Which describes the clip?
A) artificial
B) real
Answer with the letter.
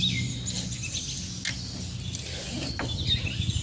B